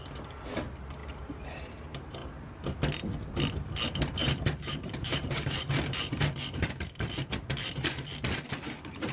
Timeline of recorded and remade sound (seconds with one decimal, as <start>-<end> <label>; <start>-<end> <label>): 0.0-1.0 recorded; 1.0-1.6 remade; 1.6-4.2 recorded; 4.2-6.2 remade; 6.2-9.1 recorded